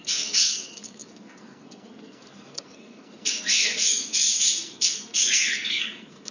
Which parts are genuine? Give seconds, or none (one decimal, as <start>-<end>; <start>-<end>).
none